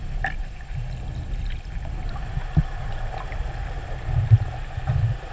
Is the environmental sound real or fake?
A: real